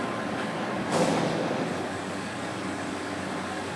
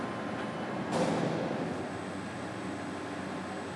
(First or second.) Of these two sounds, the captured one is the second